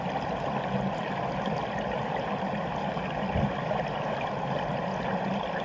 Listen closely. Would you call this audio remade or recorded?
recorded